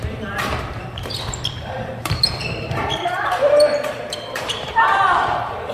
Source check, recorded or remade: remade